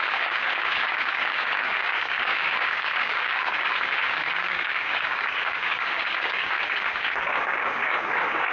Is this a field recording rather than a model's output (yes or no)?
no